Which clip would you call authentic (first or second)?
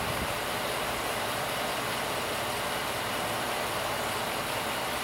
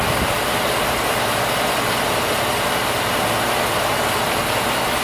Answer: second